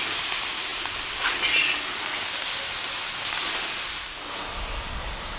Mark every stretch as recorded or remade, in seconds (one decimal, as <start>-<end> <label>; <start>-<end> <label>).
0.0-5.4 recorded